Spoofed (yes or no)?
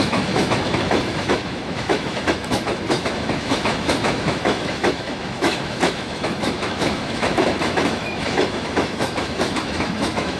yes